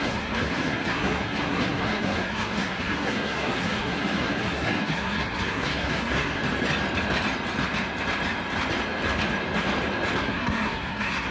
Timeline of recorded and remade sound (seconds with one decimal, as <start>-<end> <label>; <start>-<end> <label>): 0.0-6.4 remade; 6.4-10.2 recorded; 10.2-11.3 remade